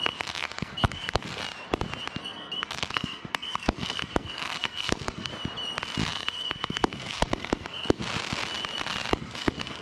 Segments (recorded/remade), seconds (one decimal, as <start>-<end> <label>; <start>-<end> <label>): 0.0-1.4 remade; 1.4-2.2 recorded; 2.2-5.3 remade; 5.3-6.1 recorded; 6.1-8.0 remade; 8.0-9.2 recorded; 9.2-9.8 remade

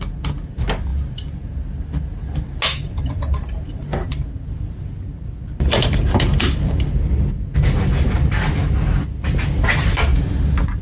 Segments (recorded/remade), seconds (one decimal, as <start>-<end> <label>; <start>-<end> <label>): 0.0-10.8 recorded

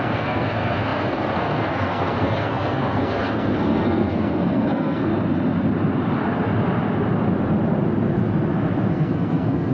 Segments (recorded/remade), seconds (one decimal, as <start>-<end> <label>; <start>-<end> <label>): 0.0-5.1 remade; 5.1-8.9 recorded; 8.9-9.7 remade

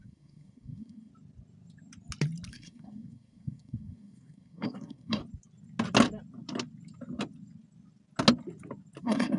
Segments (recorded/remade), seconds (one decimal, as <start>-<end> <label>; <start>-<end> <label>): 0.0-1.1 remade; 1.1-2.5 recorded; 2.5-5.2 remade; 5.2-9.0 recorded; 9.0-9.4 remade

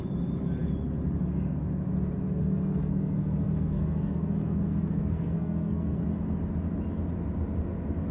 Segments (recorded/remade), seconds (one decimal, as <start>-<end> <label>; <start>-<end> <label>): 0.0-2.4 recorded; 2.4-6.0 remade; 6.0-8.1 recorded

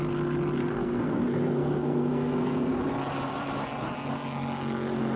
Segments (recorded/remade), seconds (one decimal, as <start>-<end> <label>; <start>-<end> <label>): 0.0-0.6 recorded; 0.6-2.7 remade; 2.7-5.2 recorded